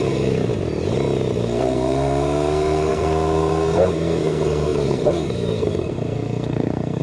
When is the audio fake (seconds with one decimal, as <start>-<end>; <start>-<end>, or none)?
0.0-0.5; 1.4-7.0